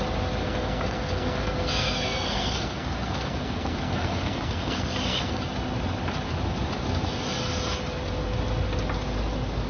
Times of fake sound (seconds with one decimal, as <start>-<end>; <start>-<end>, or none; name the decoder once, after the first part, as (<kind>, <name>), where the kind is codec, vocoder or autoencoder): 0.4-5.4 (codec, SNAC)